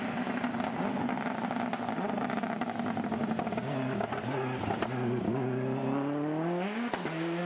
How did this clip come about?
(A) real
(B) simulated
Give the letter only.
A